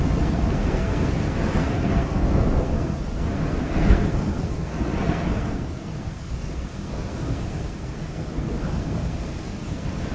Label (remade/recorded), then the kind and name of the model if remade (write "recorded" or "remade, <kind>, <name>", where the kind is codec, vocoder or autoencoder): remade, codec, SNAC